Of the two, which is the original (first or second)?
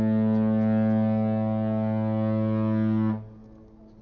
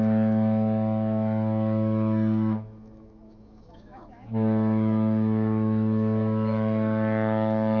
first